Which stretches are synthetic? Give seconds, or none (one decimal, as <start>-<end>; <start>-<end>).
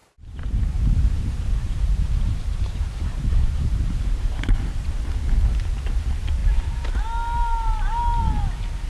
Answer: 0.0-5.0